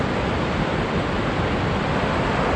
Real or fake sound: real